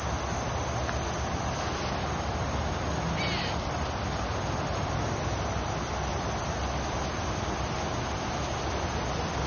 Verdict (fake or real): real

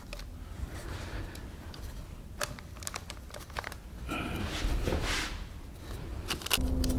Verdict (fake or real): real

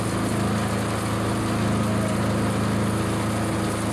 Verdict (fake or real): real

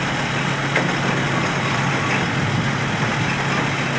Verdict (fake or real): real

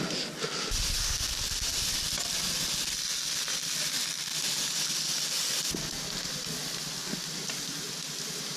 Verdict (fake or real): real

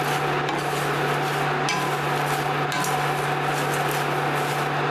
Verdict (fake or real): real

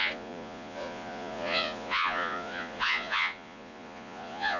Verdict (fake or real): fake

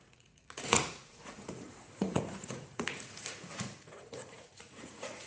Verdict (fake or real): fake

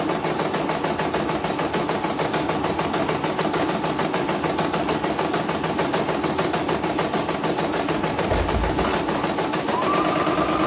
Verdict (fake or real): real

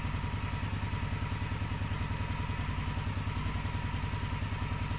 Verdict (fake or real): real